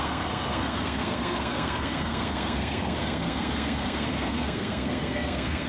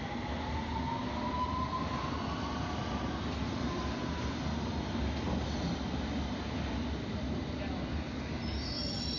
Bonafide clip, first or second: second